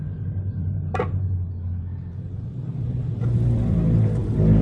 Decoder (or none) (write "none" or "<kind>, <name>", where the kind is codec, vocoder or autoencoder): none